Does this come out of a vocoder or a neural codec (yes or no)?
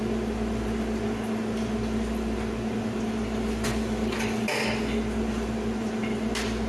no